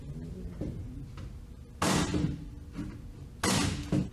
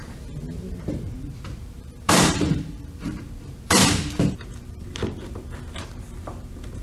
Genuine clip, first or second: first